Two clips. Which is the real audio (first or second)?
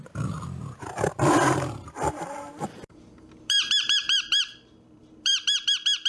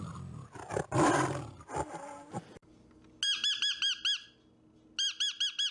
second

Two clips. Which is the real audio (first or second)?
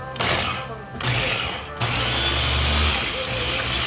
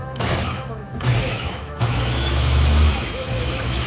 first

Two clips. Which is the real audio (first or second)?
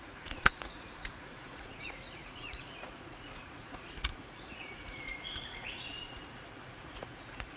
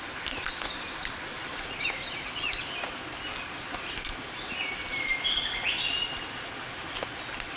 second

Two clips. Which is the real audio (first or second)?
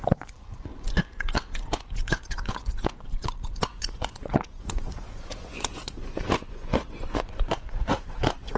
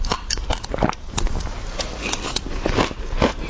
second